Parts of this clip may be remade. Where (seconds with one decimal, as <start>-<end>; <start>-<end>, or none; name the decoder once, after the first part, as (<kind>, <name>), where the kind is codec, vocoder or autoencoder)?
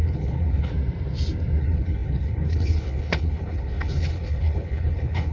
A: 0.0-0.7 (codec, HILCodec); 1.6-5.3